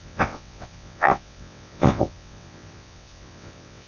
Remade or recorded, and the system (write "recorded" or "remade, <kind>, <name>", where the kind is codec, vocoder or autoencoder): remade, vocoder, WaveNeXt